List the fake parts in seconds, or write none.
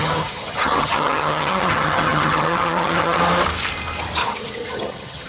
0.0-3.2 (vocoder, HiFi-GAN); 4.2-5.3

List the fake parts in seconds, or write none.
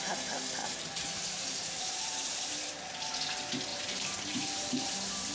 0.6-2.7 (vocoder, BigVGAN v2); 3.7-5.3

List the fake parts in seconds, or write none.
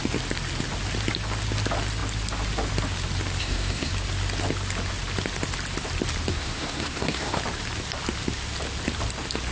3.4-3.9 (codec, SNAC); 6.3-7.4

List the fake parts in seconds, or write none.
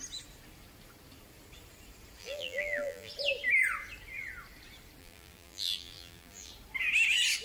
2.2-3.1 (vocoder, BigVGAN v2); 5.0-6.5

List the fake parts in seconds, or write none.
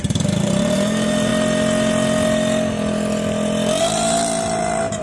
0.0-1.3 (vocoder, BigVGAN v2); 3.8-5.0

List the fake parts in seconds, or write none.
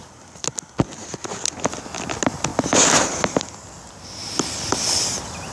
none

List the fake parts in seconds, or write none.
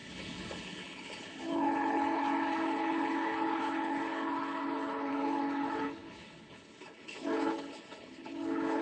0.0-8.8 (codec, HILCodec)